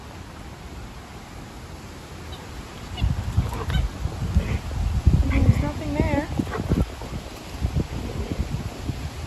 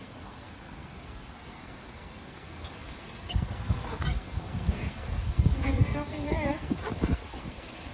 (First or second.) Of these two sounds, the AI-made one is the second